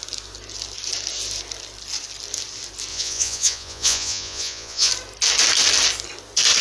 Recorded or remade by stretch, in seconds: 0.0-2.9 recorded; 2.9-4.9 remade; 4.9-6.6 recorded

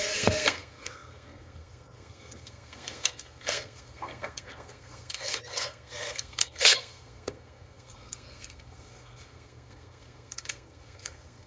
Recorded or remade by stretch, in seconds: 0.0-11.5 remade

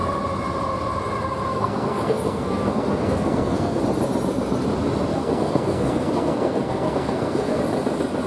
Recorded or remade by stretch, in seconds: 0.0-1.5 recorded; 1.5-3.8 remade; 3.8-5.1 recorded; 5.1-7.6 remade; 7.6-8.3 recorded

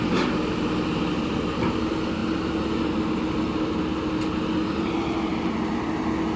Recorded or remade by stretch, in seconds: 0.0-6.4 recorded

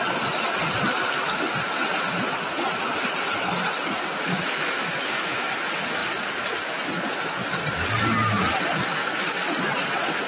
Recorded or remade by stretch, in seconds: 0.0-4.3 recorded; 4.3-5.5 remade; 5.5-10.3 recorded

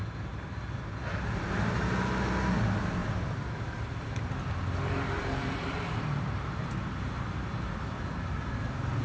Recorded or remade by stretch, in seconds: 0.0-0.6 remade; 0.6-3.0 recorded; 3.0-6.9 remade; 6.9-9.0 recorded

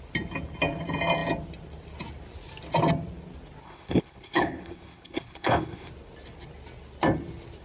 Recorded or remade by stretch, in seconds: 0.0-3.6 recorded; 3.6-5.9 remade; 5.9-7.6 recorded

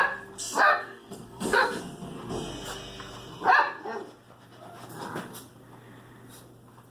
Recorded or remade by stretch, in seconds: 0.0-0.4 recorded; 0.4-1.8 remade; 1.8-6.9 recorded